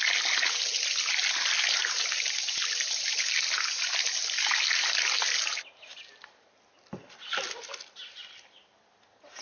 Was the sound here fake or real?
real